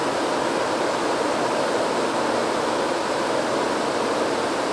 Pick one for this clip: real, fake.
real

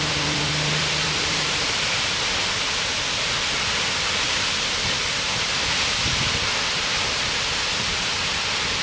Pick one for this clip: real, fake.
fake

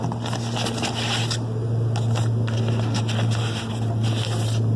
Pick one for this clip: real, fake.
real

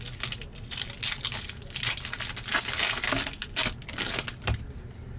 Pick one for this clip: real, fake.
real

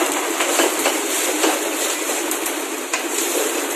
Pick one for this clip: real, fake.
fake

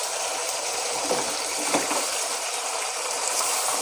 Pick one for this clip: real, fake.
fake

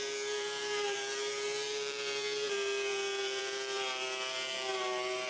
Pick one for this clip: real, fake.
fake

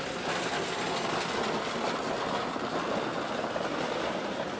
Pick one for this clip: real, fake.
real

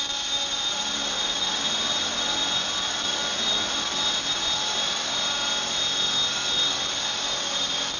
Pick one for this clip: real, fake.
real